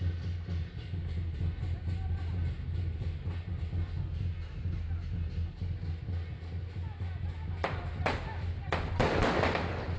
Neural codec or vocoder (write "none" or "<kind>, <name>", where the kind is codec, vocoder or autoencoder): none